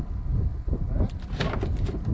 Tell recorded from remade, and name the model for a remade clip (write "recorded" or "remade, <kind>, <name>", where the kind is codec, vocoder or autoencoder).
recorded